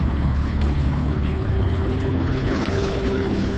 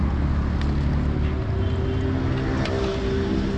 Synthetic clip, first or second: first